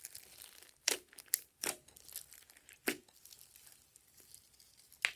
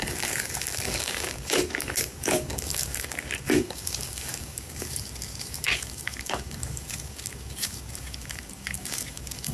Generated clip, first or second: second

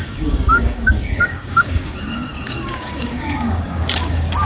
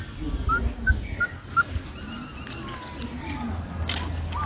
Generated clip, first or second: first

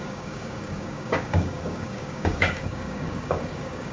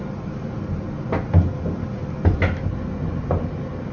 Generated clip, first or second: first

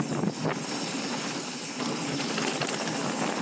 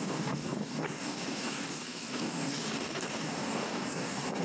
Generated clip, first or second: second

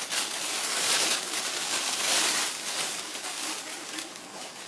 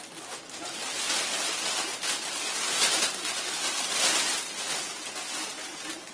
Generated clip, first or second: first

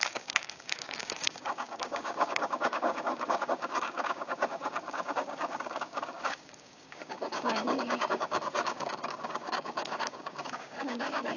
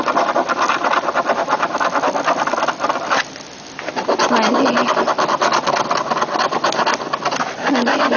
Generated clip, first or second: first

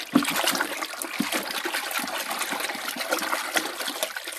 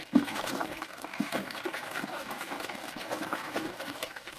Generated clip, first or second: second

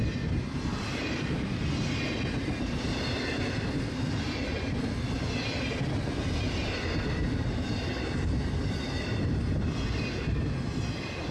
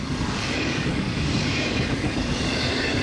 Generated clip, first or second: second